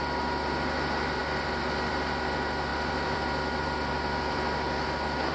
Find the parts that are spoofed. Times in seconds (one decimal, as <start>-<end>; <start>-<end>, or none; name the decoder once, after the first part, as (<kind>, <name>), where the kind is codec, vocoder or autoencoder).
1.2-1.9 (vocoder, BigVGAN v2); 2.7-5.3